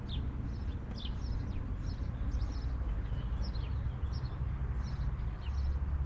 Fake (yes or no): no